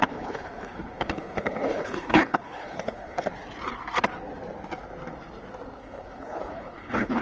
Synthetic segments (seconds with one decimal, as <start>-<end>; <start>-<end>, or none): 0.0-3.3; 5.8-7.2